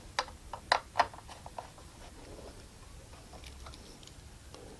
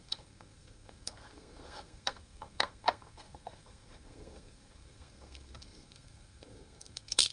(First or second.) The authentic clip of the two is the first